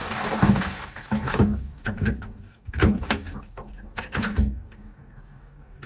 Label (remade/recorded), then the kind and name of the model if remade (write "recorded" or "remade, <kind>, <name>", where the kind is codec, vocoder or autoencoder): remade, codec, DAC